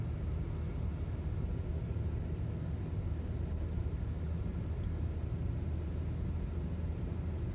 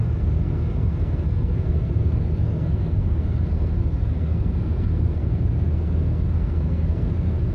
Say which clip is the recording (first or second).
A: first